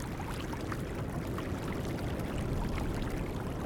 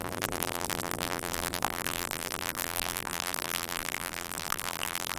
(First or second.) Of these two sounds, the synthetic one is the second